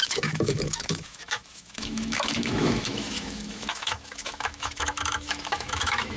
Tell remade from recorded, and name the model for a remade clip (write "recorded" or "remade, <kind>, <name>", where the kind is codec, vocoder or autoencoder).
remade, autoencoder, DAC-VAE